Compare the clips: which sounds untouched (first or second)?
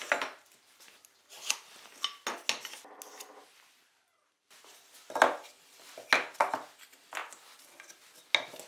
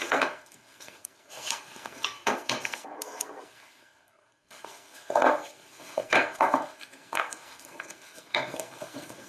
first